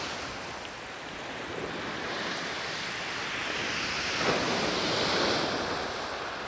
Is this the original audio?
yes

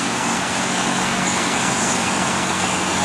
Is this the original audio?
no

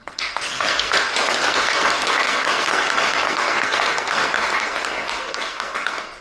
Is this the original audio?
no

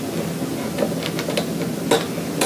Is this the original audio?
yes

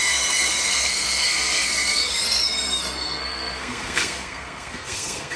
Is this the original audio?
no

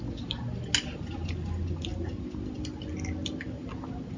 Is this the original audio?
yes